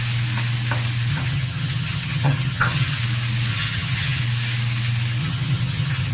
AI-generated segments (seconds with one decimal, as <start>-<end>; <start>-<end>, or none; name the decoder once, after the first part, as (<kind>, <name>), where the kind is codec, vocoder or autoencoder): 1.1-3.0 (vocoder, HiFi-GAN); 3.5-4.2; 5.2-6.1